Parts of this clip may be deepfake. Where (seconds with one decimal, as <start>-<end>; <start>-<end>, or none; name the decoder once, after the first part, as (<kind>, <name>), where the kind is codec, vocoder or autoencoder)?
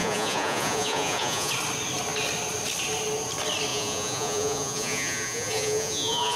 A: 0.0-1.5 (vocoder, Vocos); 3.7-6.4